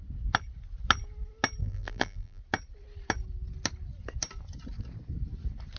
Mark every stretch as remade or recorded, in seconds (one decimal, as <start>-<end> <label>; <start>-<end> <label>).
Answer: 0.0-1.6 recorded; 1.6-2.4 remade; 2.4-5.8 recorded